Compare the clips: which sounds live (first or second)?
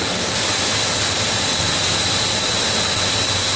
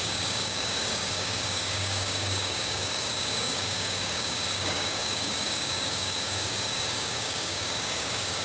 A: first